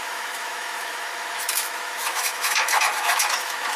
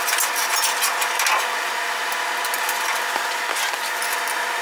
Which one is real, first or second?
second